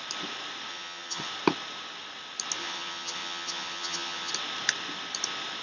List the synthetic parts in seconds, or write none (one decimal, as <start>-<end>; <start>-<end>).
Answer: 0.7-1.3; 2.6-4.3